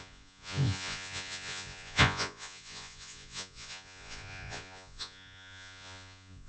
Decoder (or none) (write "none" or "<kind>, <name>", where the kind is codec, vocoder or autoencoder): vocoder, Vocos